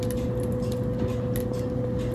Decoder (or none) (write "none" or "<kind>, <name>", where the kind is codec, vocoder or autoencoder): none